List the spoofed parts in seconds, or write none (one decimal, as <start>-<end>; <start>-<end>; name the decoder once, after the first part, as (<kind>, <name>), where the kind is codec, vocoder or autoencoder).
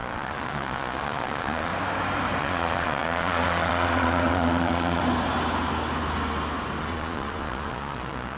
0.0-1.7 (vocoder, Vocos); 2.4-5.0; 6.8-8.4